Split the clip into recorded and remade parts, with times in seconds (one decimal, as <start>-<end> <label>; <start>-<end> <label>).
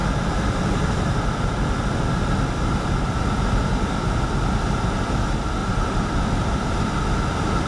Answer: 0.0-4.6 remade; 4.6-5.6 recorded; 5.6-6.5 remade; 6.5-7.7 recorded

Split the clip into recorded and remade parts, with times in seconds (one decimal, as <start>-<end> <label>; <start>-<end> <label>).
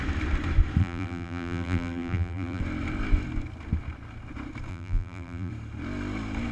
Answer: 0.0-0.8 recorded; 0.8-2.6 remade; 2.6-4.7 recorded; 4.7-5.5 remade; 5.5-6.5 recorded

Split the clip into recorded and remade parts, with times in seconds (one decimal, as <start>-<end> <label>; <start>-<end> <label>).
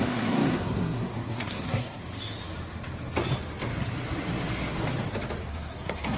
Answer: 0.0-2.0 remade; 2.0-5.5 recorded; 5.5-6.2 remade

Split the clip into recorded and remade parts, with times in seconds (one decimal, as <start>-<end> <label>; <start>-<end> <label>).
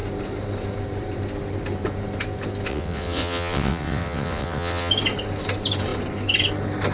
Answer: 0.0-2.7 recorded; 2.7-4.9 remade; 4.9-6.9 recorded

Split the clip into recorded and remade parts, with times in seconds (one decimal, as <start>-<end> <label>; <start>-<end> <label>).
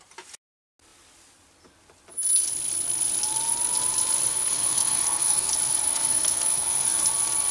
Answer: 0.0-4.3 recorded; 4.3-5.5 remade; 5.5-5.9 recorded; 5.9-7.1 remade; 7.1-7.5 recorded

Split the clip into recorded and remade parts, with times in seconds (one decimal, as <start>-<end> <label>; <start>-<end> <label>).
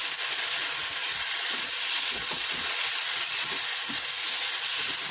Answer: 0.0-1.0 recorded; 1.0-3.5 remade; 3.5-5.1 recorded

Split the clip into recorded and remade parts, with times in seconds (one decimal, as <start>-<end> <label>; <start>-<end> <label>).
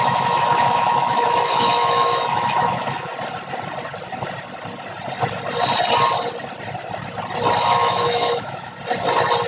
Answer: 0.0-3.1 remade; 3.1-7.6 recorded; 7.6-8.7 remade; 8.7-9.5 recorded